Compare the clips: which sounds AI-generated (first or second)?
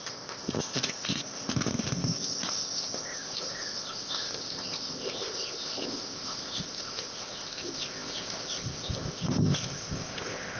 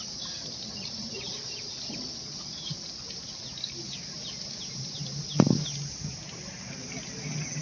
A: first